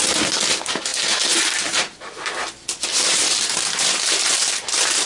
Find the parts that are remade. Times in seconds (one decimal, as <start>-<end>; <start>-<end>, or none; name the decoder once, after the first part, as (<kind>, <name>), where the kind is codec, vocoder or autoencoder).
none